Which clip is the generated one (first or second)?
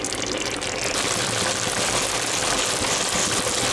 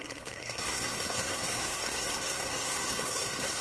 second